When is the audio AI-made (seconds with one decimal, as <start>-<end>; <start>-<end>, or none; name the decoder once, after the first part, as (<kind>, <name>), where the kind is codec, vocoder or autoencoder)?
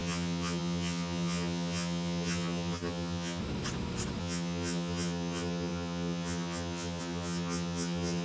0.0-3.4 (vocoder, HiFi-GAN); 4.2-8.2